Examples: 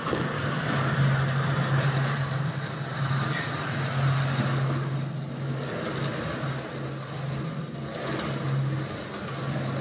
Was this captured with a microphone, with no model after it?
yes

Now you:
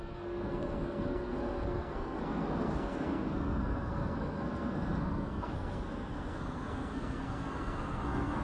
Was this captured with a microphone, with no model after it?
no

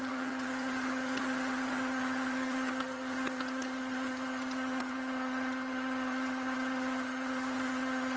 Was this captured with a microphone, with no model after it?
no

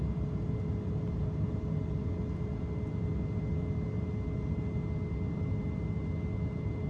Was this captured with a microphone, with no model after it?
yes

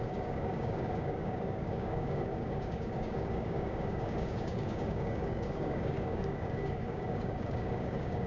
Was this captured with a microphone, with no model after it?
no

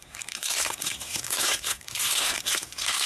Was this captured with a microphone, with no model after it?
no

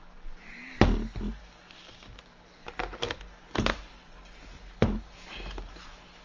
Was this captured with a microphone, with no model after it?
yes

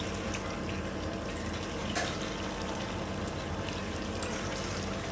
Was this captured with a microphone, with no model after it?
yes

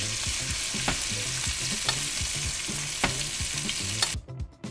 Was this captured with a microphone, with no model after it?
yes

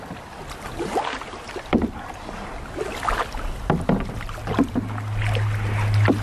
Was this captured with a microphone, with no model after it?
yes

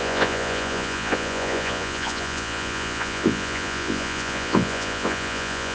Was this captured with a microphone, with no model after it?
no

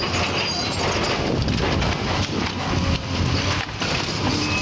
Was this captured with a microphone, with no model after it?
yes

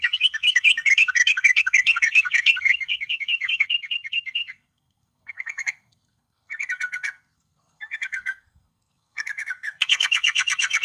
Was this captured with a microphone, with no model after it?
no